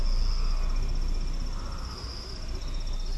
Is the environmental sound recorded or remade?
recorded